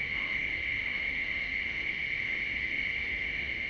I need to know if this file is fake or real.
fake